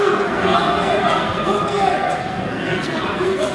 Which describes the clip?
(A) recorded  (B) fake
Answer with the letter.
B